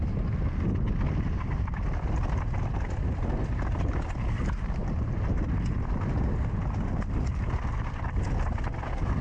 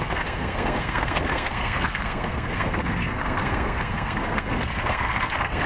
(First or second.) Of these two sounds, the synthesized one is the second